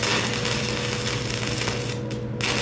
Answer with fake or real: real